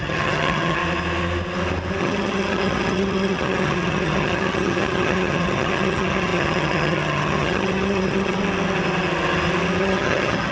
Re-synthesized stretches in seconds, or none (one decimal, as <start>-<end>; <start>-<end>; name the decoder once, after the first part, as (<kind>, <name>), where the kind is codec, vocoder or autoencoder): 0.0-0.8 (vocoder, HiFi-GAN); 2.0-8.4; 9.8-10.5